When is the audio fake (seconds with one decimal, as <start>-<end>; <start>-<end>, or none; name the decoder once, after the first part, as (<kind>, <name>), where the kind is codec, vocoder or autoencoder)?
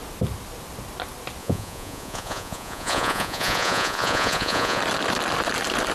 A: 1.4-4.8 (vocoder, Vocos)